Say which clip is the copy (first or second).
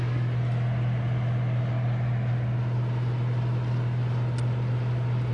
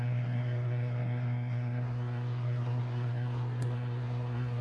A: second